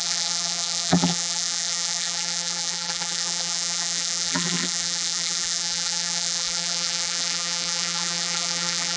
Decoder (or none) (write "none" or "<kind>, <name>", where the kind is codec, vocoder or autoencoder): vocoder, BigVGAN v2